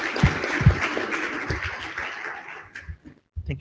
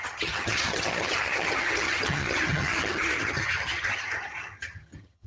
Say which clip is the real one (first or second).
first